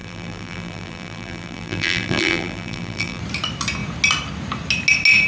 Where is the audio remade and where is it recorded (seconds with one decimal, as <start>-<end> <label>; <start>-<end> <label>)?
0.0-3.2 remade; 3.2-5.3 recorded

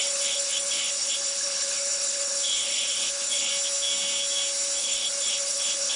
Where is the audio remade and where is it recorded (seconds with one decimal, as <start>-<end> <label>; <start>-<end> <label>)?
0.0-3.5 remade; 3.5-4.8 recorded; 4.8-6.0 remade

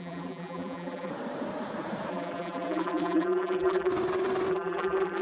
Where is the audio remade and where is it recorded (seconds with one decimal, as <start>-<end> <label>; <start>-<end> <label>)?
0.0-1.1 remade; 1.1-2.1 recorded; 2.1-3.9 remade; 3.9-4.5 recorded; 4.5-5.2 remade

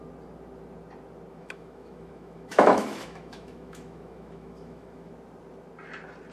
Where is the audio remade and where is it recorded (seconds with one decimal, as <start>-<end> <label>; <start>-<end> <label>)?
0.0-1.3 recorded; 1.3-5.1 remade; 5.1-6.3 recorded

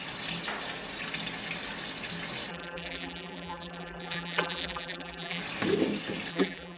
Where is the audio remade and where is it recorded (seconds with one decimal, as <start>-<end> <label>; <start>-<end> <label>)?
0.0-2.5 recorded; 2.5-5.4 remade; 5.4-6.3 recorded; 6.3-6.8 remade

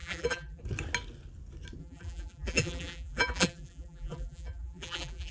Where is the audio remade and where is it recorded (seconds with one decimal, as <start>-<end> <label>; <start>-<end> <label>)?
0.0-0.6 remade; 0.6-1.8 recorded; 1.8-5.3 remade

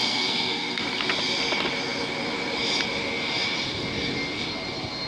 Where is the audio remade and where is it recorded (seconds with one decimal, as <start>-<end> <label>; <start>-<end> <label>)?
0.0-0.8 remade; 0.8-5.1 recorded

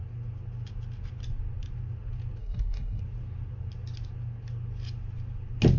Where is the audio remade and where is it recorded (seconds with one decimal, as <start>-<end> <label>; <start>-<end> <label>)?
0.0-2.4 recorded; 2.4-3.0 remade; 3.0-5.8 recorded